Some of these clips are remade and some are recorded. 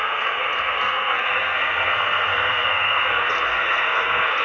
remade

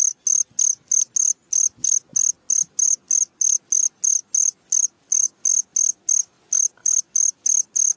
recorded